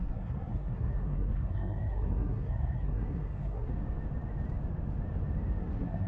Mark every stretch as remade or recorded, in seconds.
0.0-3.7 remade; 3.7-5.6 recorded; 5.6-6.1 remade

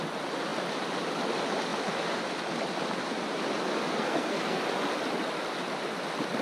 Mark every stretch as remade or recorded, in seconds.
0.0-3.9 recorded; 3.9-4.6 remade; 4.6-6.4 recorded

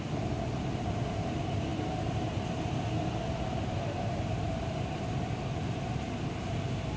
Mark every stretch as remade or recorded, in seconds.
0.0-7.0 recorded